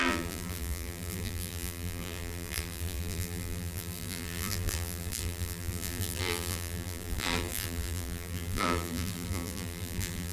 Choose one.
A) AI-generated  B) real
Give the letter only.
A